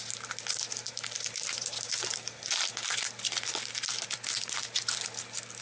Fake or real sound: real